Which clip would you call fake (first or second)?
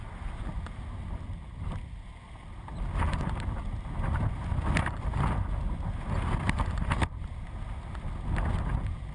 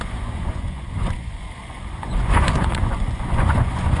second